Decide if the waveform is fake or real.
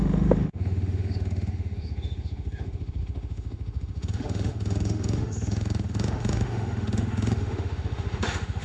fake